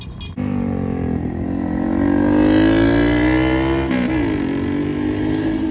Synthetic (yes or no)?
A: no